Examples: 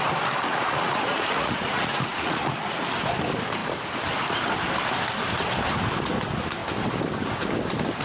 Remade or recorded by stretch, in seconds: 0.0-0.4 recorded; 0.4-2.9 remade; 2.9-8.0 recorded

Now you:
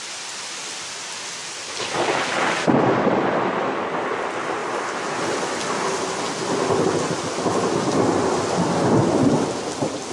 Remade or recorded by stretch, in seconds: 0.0-10.1 recorded